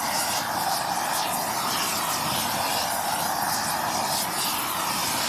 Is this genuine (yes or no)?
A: yes